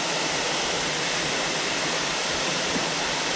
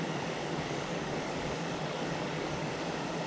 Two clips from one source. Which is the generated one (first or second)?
second